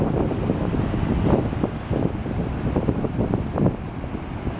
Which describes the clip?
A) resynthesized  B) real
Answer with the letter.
B